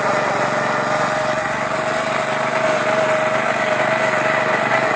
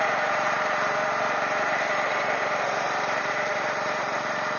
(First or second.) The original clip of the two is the first